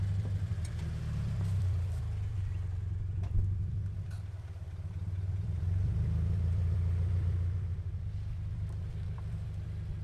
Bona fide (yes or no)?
no